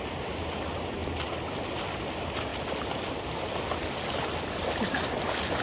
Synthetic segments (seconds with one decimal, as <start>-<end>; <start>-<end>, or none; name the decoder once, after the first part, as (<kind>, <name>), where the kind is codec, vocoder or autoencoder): 1.0-1.7 (vocoder, BigVGAN v2); 2.5-3.5